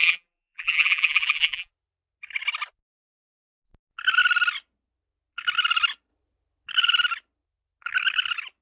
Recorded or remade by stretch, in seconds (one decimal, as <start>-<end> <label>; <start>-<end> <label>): 0.0-1.7 remade; 1.7-8.6 recorded